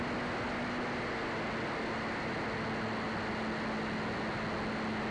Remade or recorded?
recorded